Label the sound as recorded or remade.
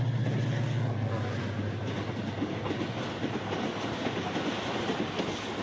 recorded